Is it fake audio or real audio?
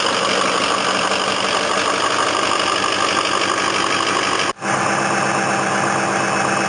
real